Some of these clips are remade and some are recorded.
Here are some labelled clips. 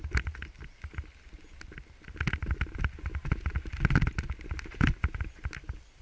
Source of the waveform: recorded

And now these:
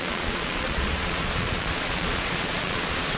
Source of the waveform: remade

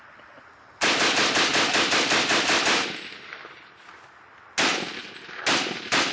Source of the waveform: recorded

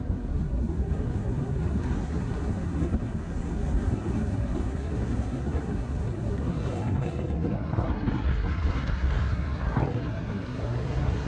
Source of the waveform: remade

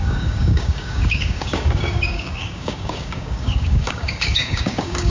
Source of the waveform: remade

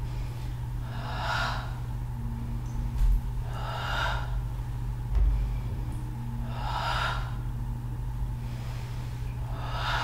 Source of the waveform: recorded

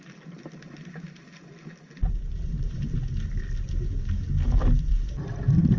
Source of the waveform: recorded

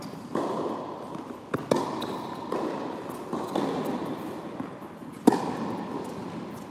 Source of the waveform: recorded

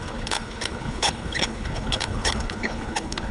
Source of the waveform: remade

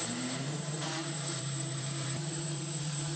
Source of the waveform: remade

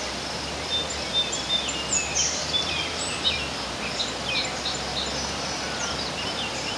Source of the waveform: recorded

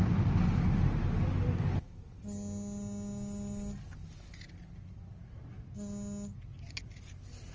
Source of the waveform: recorded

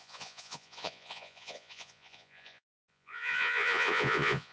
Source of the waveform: remade